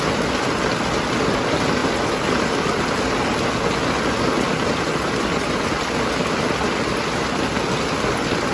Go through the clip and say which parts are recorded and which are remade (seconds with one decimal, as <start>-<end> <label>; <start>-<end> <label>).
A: 0.0-8.5 recorded